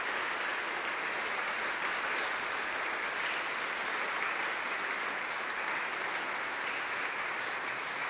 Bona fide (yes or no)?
yes